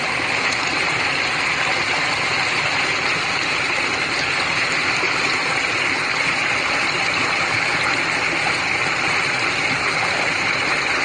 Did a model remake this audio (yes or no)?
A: no